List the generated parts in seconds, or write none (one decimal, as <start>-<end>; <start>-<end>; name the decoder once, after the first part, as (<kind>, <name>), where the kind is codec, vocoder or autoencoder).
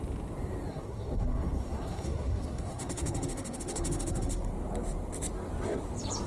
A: 0.7-4.5 (codec, SNAC)